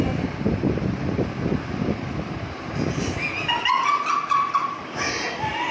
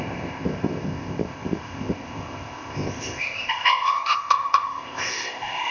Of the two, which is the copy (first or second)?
second